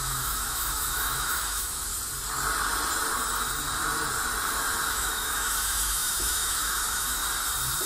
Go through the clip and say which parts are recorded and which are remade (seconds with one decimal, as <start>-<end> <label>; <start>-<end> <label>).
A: 0.0-1.9 remade; 1.9-4.9 recorded; 4.9-7.2 remade; 7.2-7.9 recorded